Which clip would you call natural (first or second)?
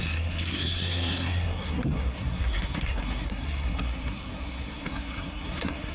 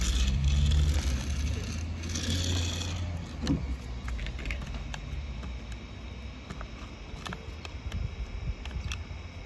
second